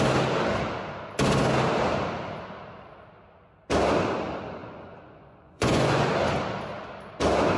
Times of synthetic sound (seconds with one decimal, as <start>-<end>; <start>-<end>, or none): 4.6-6.1